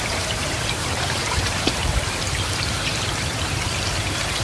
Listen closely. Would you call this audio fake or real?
fake